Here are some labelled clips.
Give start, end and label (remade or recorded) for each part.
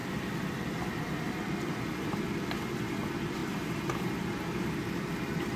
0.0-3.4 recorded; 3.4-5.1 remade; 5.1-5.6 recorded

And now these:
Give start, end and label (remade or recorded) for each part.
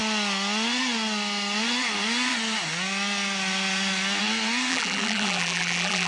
0.0-4.7 recorded; 4.7-6.1 remade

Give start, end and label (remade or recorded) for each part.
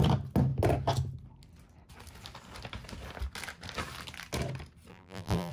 0.0-4.9 recorded; 4.9-5.5 remade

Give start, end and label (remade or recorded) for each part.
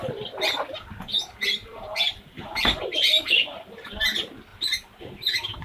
0.0-1.7 recorded; 1.7-3.9 remade; 3.9-4.5 recorded; 4.5-5.6 remade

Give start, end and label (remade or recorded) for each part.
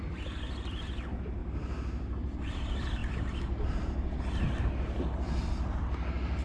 0.0-1.4 recorded; 1.4-2.6 remade; 2.6-3.0 recorded; 3.0-4.2 remade; 4.2-6.4 recorded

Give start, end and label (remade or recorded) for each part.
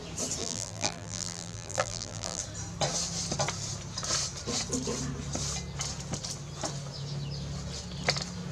0.0-0.4 recorded; 0.4-2.4 remade; 2.4-8.5 recorded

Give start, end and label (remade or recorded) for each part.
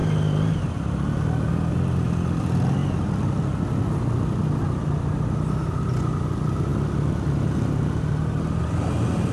0.0-9.3 recorded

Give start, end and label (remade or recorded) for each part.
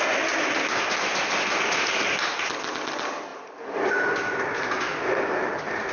0.0-3.3 recorded; 3.3-4.8 remade; 4.8-5.9 recorded